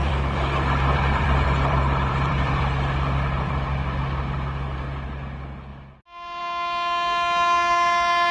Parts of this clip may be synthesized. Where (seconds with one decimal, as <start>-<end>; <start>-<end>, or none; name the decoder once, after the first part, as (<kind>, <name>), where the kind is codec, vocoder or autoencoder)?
0.0-3.5 (vocoder, BigVGAN v2)